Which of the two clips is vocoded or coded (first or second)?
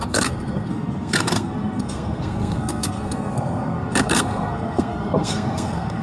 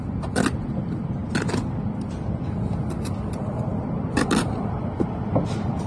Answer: first